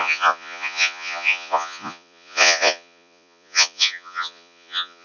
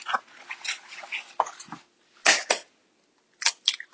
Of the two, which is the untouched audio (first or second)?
second